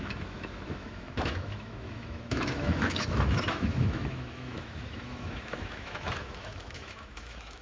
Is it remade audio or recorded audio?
remade